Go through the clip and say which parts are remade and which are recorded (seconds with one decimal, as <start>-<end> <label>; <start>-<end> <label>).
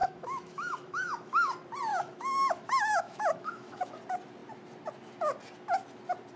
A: 0.0-1.5 remade; 1.5-1.9 recorded; 1.9-3.9 remade; 3.9-6.4 recorded